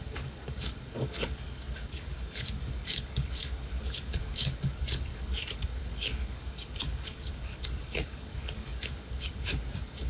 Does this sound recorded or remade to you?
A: remade